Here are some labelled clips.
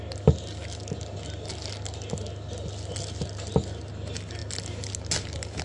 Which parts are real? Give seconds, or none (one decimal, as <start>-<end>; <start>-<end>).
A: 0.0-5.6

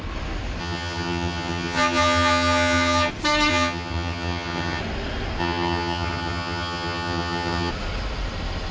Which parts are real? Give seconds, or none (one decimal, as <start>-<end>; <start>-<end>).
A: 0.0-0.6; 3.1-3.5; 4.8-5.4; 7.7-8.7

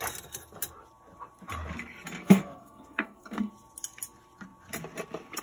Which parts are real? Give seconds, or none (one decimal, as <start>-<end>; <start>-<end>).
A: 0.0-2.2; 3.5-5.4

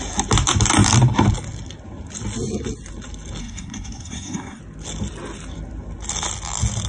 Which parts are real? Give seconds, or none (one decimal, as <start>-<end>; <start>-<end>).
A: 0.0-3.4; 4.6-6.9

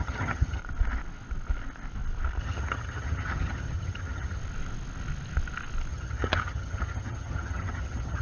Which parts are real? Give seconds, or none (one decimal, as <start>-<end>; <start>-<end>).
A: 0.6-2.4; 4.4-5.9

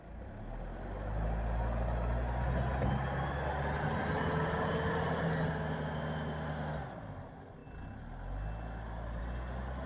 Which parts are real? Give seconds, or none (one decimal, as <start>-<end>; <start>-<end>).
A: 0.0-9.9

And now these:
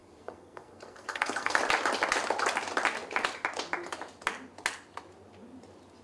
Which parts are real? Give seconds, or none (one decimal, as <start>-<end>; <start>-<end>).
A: 1.6-6.0